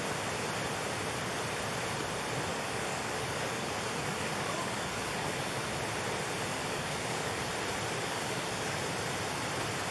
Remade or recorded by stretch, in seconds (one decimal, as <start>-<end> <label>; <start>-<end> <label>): 0.0-2.5 recorded; 2.5-5.7 remade; 5.7-6.5 recorded; 6.5-7.5 remade; 7.5-8.0 recorded; 8.0-8.8 remade; 8.8-9.9 recorded